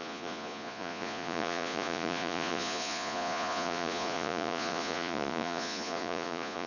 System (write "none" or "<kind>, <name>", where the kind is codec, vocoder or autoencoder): vocoder, Vocos